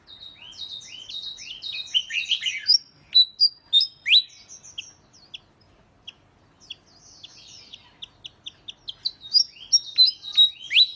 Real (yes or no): yes